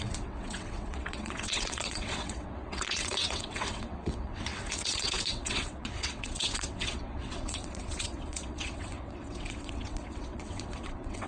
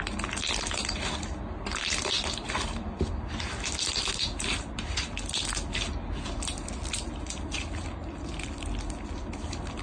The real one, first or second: second